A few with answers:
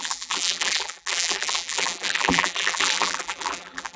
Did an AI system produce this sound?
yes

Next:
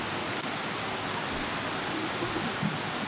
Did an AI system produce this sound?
no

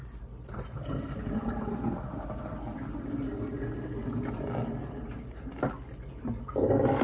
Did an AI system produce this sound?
no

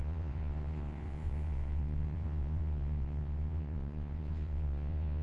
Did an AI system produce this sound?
yes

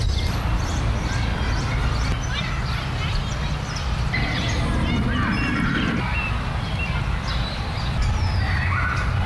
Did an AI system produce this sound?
no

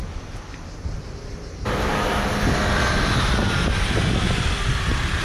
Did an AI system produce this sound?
no